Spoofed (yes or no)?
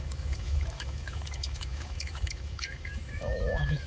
yes